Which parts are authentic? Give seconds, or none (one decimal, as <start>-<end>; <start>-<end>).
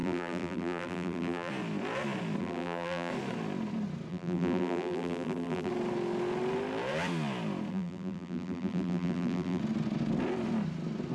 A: 1.5-2.4; 3.1-4.1; 5.7-7.7; 9.6-11.1